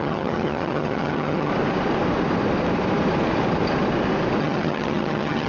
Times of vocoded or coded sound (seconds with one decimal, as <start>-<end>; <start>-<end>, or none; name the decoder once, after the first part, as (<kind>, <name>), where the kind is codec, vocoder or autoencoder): 0.0-1.5 (vocoder, HiFi-GAN); 4.4-5.5